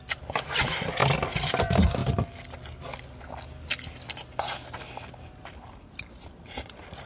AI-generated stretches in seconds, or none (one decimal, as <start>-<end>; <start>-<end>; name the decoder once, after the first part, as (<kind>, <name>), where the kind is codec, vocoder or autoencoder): 0.0-1.0 (vocoder, BigVGAN v2); 1.5-2.0; 6.2-7.1